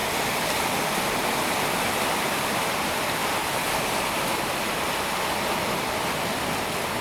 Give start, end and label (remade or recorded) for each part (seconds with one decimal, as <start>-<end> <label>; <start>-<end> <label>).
0.0-7.0 recorded